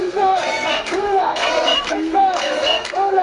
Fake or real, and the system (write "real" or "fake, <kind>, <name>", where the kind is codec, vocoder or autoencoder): fake, codec, SNAC